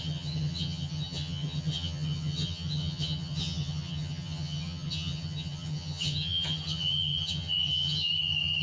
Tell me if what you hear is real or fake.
fake